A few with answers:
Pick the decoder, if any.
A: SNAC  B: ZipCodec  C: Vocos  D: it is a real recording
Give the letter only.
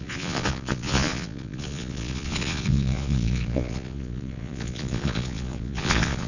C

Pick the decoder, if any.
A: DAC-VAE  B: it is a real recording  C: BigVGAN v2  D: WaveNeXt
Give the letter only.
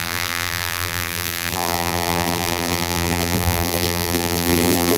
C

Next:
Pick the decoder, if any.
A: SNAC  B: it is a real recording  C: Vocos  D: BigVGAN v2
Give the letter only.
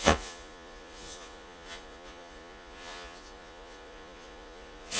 C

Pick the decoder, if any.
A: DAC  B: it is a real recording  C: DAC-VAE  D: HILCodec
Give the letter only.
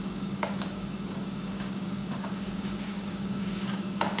A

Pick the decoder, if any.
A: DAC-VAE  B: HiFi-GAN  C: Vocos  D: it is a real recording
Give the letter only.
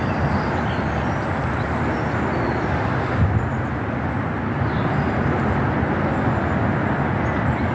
D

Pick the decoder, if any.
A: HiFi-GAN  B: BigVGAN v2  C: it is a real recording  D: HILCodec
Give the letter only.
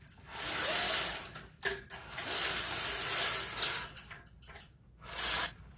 C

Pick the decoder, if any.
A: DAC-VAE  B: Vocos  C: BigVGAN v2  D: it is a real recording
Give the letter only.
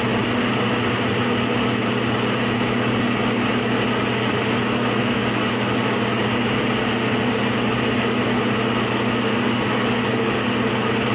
D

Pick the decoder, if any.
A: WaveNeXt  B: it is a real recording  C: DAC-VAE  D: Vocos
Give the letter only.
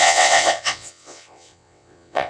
A